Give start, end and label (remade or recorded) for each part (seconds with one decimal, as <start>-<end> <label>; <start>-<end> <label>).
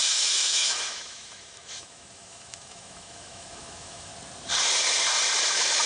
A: 0.0-4.1 remade; 4.1-5.5 recorded; 5.5-5.9 remade